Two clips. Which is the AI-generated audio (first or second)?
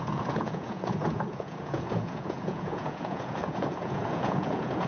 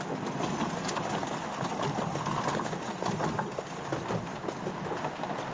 first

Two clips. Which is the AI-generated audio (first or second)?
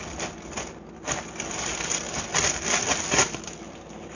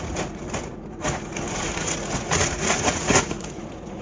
second